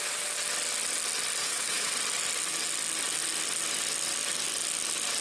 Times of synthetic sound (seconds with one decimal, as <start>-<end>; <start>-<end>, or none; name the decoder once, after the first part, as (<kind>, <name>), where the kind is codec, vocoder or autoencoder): 1.4-1.9 (autoencoder, DAC-VAE)